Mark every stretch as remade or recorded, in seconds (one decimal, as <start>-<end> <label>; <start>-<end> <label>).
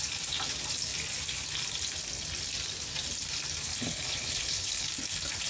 0.0-3.7 recorded; 3.7-4.9 remade; 4.9-5.5 recorded